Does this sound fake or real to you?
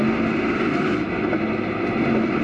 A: real